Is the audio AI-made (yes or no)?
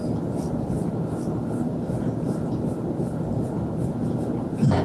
no